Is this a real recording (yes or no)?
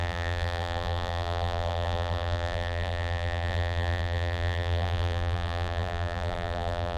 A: no